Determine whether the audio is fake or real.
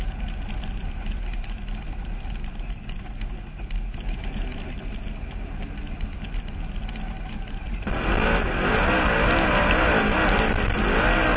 real